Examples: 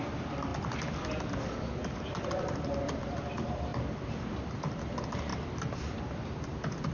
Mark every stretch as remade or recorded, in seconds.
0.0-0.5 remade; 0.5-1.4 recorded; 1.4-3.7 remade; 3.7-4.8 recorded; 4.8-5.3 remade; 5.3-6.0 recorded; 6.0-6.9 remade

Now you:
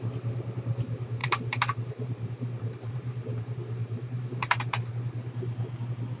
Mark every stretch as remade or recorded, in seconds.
0.0-1.2 recorded; 1.2-4.9 remade; 4.9-6.2 recorded

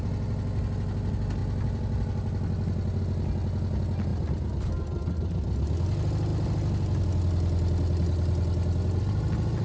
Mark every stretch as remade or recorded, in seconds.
0.0-9.6 recorded

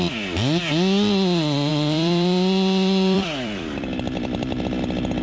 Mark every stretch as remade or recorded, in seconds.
0.0-1.7 recorded; 1.7-4.8 remade; 4.8-5.2 recorded

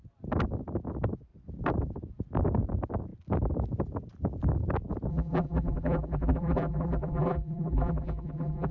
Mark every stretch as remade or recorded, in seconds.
0.0-5.1 recorded; 5.1-8.7 remade

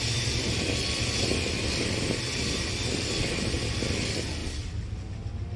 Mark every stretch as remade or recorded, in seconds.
0.0-1.1 recorded; 1.1-3.2 remade; 3.2-5.6 recorded

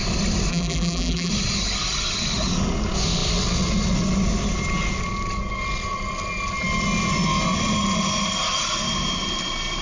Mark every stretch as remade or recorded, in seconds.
0.0-0.5 recorded; 0.5-1.3 remade; 1.3-9.8 recorded

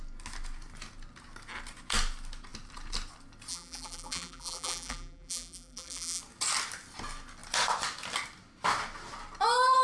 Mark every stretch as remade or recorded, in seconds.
0.0-3.5 recorded; 3.5-6.2 remade; 6.2-9.8 recorded